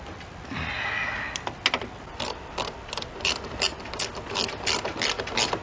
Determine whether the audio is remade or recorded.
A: recorded